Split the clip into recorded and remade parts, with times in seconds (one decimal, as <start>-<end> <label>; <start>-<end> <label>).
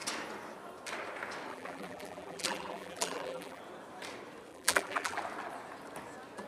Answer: 0.0-1.5 recorded; 1.5-3.6 remade; 3.6-4.5 recorded; 4.5-5.2 remade; 5.2-6.5 recorded